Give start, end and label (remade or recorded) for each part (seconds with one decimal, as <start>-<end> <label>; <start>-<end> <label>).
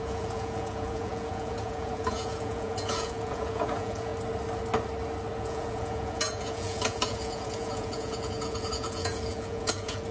0.0-4.1 remade; 4.1-5.4 recorded; 5.4-10.1 remade